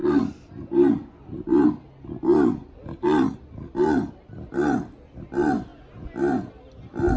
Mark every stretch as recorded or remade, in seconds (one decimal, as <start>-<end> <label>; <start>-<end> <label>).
0.0-7.2 recorded